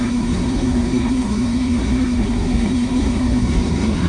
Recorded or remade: remade